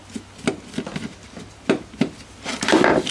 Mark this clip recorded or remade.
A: recorded